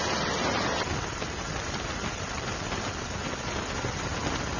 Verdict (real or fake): real